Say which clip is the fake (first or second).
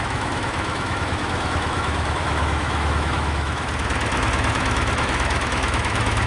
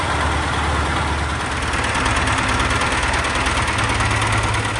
first